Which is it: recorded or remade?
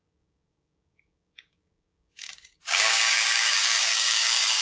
remade